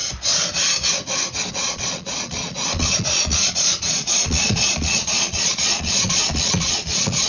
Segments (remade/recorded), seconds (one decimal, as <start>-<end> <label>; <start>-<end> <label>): 0.0-1.5 recorded; 1.5-7.3 remade